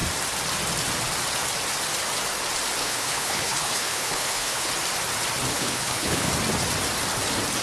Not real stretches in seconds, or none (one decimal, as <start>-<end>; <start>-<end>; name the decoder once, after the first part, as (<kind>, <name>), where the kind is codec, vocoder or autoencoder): 2.8-4.7 (codec, HILCodec); 5.5-6.3